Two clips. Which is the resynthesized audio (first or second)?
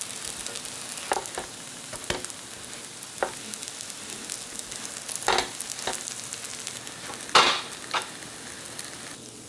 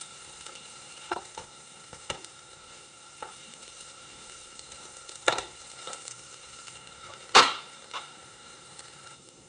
second